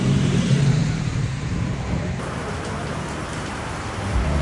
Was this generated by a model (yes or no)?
yes